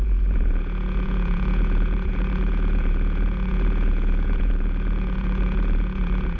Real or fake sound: fake